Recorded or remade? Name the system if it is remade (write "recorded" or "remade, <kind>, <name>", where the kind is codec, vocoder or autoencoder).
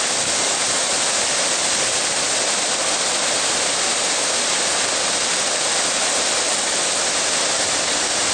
recorded